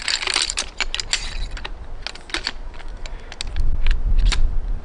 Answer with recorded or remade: recorded